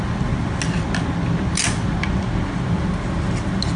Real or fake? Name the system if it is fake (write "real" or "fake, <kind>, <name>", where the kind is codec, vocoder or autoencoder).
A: real